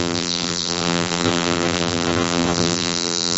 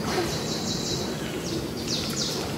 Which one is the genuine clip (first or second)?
second